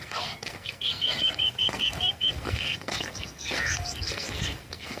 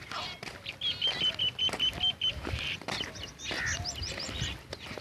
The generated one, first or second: first